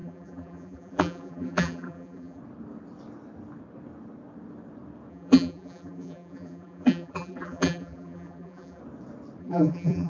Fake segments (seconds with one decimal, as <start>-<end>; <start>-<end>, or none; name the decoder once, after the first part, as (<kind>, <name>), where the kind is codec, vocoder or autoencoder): 0.0-2.4 (vocoder, BigVGAN v2); 5.1-8.8; 9.4-10.1